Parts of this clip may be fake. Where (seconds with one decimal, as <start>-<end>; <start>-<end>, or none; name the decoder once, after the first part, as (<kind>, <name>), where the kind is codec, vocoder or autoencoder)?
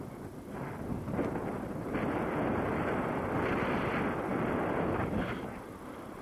none